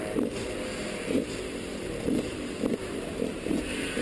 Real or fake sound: fake